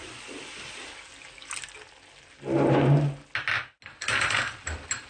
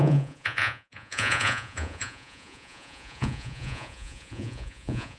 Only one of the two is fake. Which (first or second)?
second